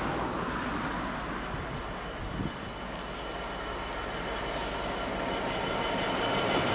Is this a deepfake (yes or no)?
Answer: no